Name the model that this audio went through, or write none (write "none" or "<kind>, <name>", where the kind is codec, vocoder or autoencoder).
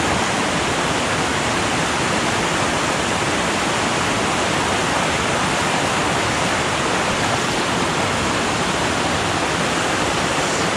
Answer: none